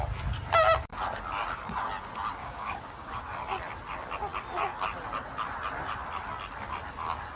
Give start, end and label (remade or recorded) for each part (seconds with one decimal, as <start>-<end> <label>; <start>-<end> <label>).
0.0-2.4 recorded; 2.4-3.2 remade; 3.2-7.4 recorded